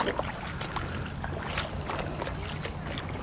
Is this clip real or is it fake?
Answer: real